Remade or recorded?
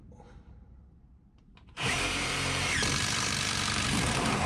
remade